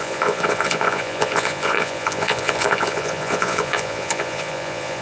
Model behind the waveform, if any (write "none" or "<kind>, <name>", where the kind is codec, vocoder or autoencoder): vocoder, Vocos